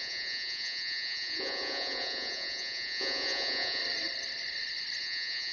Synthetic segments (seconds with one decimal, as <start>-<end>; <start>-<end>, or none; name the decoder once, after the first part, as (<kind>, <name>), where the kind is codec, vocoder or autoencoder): 0.0-3.8 (vocoder, Vocos); 5.0-5.5